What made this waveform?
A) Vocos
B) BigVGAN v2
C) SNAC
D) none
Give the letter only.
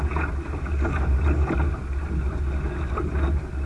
D